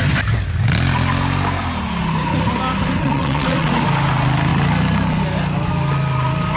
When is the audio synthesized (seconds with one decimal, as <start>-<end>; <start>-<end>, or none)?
3.0-3.7